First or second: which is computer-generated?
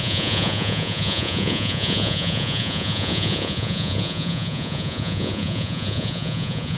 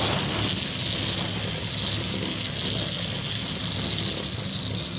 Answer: first